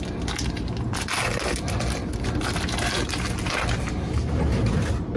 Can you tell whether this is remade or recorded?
recorded